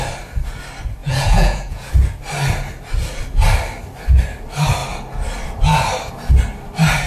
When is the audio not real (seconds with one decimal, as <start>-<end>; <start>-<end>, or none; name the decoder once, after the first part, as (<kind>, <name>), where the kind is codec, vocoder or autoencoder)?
1.0-1.9 (vocoder, Vocos)